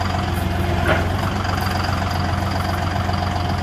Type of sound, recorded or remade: recorded